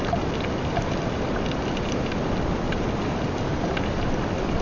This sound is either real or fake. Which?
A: real